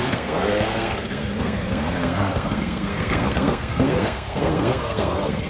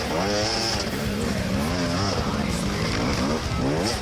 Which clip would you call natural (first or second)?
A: second